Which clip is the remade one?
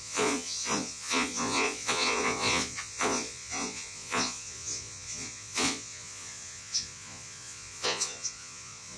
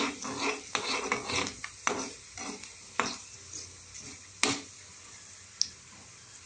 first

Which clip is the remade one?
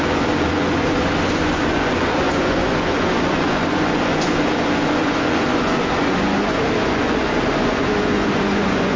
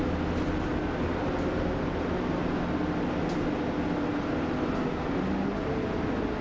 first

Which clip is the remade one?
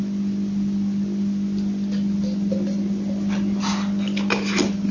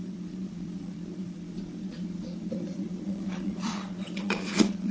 second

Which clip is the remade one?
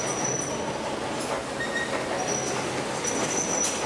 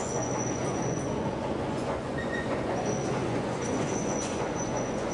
second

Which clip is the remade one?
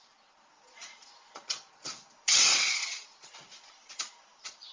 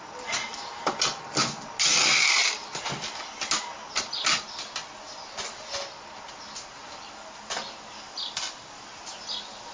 first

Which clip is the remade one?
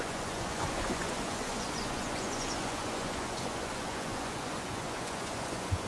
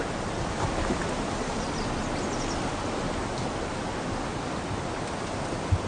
first